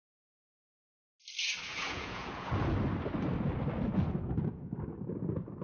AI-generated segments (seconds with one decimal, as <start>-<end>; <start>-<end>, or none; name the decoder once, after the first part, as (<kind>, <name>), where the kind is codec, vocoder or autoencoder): 1.7-2.5 (vocoder, Vocos)